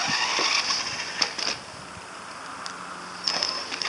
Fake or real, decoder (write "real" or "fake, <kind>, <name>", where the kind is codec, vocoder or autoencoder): real